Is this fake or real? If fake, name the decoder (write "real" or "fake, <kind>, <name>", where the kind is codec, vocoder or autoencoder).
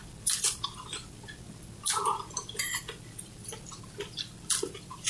fake, vocoder, BigVGAN v2